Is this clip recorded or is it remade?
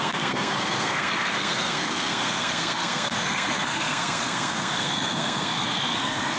remade